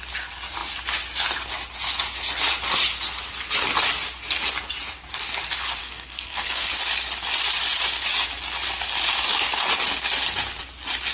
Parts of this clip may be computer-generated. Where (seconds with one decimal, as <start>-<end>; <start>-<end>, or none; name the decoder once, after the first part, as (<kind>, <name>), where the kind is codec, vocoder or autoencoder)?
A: 5.8-6.7 (codec, SNAC)